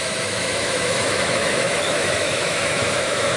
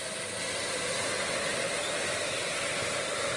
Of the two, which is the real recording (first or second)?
second